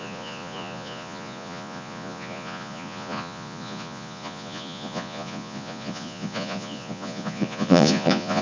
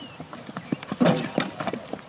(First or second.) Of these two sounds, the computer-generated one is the first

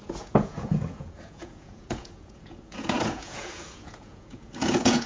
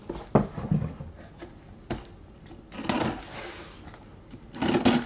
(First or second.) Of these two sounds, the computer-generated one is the first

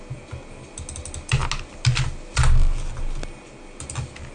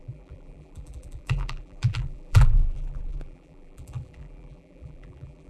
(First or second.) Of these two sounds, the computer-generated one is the second